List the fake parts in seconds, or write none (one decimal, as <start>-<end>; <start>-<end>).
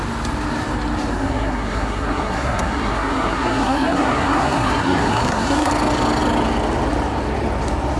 1.1-5.7